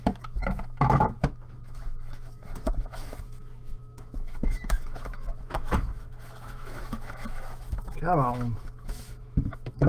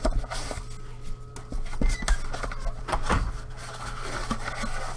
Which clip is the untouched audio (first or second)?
second